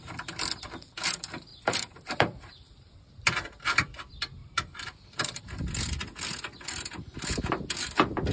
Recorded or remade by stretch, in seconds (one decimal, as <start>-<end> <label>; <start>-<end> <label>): 0.0-1.5 recorded; 1.5-3.2 remade; 3.2-4.4 recorded; 4.4-5.4 remade; 5.4-8.3 recorded